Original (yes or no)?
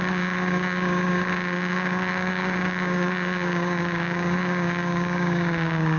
no